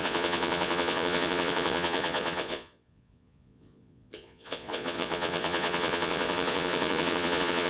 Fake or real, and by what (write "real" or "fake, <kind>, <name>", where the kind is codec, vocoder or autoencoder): fake, vocoder, Vocos